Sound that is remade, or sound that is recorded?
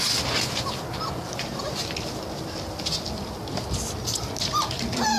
recorded